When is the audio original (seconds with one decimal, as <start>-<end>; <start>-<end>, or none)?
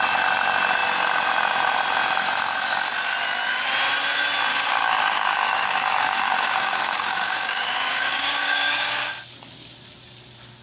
0.0-4.5; 9.1-10.6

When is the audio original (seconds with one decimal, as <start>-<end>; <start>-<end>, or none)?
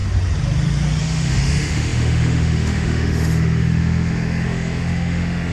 0.0-1.0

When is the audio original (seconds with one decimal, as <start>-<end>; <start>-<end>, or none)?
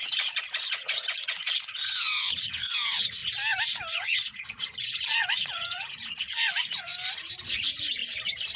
3.2-3.9; 6.9-7.5; 8.0-8.6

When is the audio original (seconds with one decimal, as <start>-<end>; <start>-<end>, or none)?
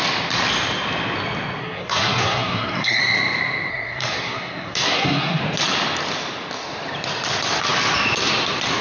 0.0-1.6; 3.0-3.7; 5.4-8.8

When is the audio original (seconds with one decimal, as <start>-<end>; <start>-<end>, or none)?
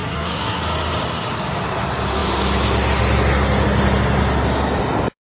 0.6-5.4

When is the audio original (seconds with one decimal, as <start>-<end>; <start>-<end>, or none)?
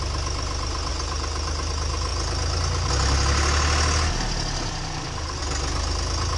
0.0-0.9; 1.7-6.4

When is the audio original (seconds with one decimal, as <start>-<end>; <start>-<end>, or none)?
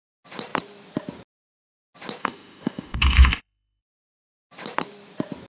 0.0-2.2; 3.8-5.5